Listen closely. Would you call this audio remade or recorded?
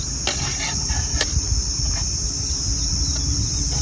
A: recorded